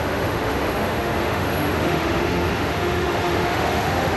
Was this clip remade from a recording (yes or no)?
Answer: yes